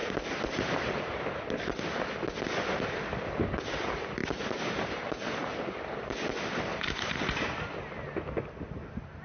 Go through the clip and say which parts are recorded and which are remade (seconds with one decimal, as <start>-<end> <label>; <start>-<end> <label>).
0.0-1.2 remade; 1.2-4.2 recorded; 4.2-5.1 remade; 5.1-6.7 recorded; 6.7-7.7 remade; 7.7-9.2 recorded

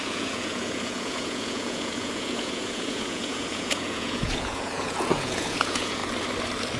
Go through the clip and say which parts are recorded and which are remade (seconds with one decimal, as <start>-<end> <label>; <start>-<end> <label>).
0.0-6.0 remade; 6.0-6.8 recorded

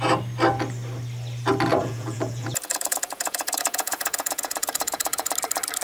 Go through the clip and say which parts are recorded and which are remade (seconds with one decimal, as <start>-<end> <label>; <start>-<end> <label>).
0.0-1.8 recorded; 1.8-5.3 remade; 5.3-5.8 recorded

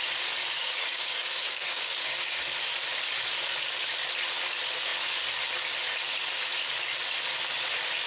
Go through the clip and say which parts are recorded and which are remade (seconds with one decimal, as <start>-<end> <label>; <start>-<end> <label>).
0.0-0.6 recorded; 0.6-2.4 remade; 2.4-8.1 recorded